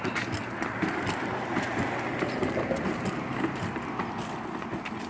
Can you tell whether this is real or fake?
real